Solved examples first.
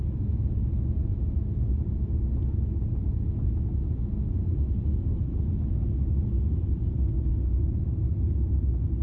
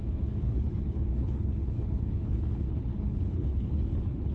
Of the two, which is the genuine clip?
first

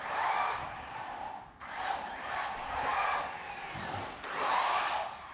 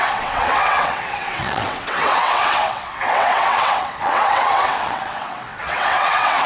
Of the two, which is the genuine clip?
first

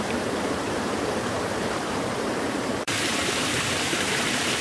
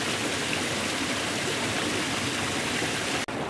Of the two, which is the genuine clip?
second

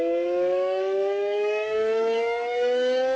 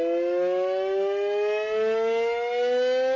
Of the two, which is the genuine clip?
second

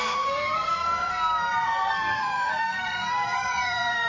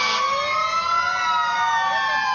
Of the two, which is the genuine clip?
second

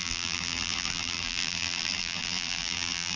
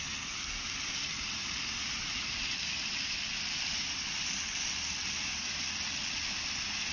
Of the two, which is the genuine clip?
second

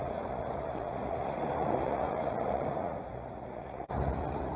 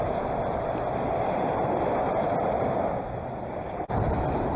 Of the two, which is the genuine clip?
second